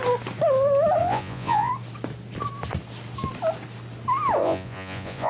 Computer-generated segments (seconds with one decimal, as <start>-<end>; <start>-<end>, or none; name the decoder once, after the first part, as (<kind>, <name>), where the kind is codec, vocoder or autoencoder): 1.0-1.7 (vocoder, Vocos); 4.4-5.3